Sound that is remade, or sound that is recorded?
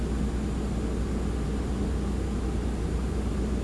recorded